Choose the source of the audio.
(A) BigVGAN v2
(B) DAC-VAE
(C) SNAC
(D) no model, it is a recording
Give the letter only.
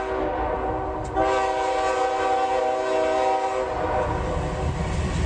D